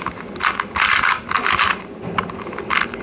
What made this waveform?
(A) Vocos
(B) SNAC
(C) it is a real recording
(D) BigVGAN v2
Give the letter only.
C